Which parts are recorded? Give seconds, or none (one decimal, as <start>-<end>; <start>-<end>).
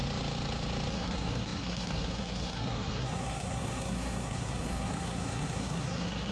0.0-0.9